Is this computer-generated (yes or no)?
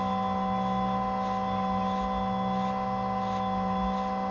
no